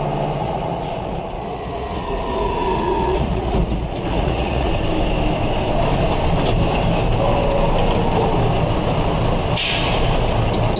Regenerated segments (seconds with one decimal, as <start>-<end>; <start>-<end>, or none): 0.4-4.7